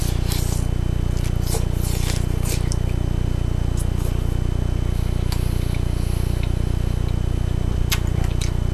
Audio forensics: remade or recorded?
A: recorded